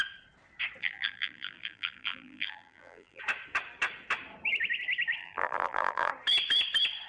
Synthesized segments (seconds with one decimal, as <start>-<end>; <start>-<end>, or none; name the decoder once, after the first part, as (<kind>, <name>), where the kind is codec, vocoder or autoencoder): 0.8-3.2 (vocoder, BigVGAN v2); 5.2-6.1